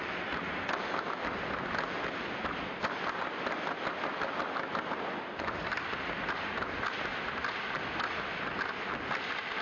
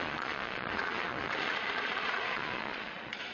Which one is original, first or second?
first